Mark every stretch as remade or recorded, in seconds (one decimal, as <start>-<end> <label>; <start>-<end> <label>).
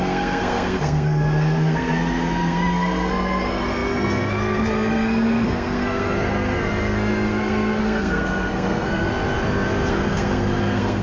0.0-9.1 remade; 9.1-9.9 recorded; 9.9-11.0 remade